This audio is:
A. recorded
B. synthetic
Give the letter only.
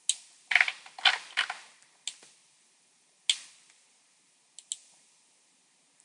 A